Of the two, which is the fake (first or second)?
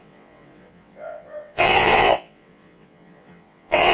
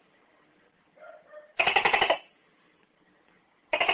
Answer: first